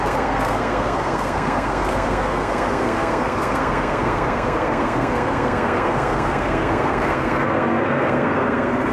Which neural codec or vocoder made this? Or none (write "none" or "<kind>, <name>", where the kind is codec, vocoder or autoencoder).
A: codec, SNAC